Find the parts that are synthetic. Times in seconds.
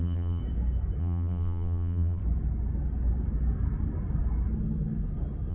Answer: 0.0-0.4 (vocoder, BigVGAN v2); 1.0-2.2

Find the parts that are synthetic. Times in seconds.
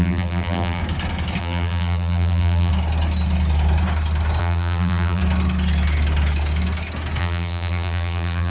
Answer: 0.0-0.8 (vocoder, BigVGAN v2); 1.4-2.7; 4.4-5.2; 7.2-8.5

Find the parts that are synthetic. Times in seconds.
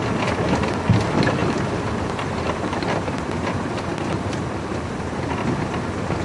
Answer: none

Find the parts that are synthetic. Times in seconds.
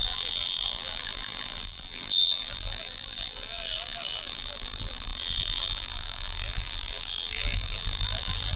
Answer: 0.0-8.6 (vocoder, BigVGAN v2)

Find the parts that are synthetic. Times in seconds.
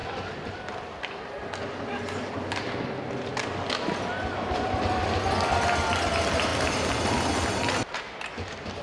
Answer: 6.5-7.8 (vocoder, BigVGAN v2)